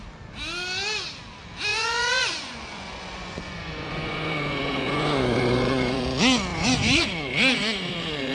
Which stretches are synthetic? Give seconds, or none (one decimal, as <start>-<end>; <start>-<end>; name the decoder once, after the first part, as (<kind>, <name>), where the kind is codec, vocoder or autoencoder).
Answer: 1.7-6.0 (vocoder, Vocos); 6.5-8.3